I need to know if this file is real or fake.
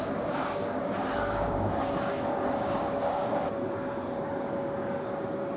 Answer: fake